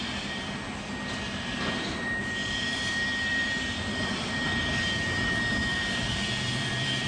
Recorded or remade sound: remade